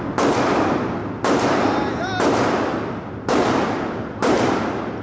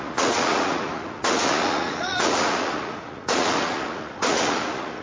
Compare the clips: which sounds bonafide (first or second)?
first